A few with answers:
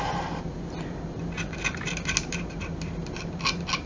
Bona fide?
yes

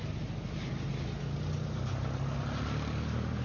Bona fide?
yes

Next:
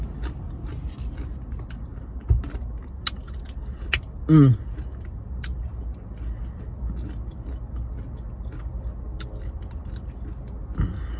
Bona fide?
yes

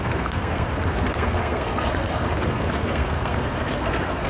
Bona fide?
no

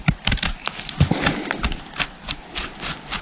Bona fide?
yes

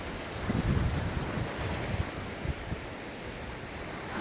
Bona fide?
yes